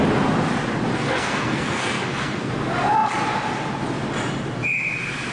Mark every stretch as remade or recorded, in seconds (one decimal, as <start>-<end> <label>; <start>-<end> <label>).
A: 0.0-0.9 recorded; 0.9-2.5 remade; 2.5-5.3 recorded